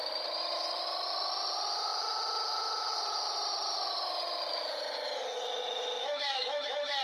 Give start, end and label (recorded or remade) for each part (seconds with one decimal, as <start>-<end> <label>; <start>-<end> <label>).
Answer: 0.0-6.0 recorded; 6.0-7.0 remade